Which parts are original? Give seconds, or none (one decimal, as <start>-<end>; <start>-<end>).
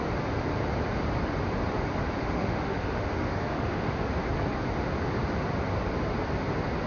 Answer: 0.0-2.2; 4.0-6.9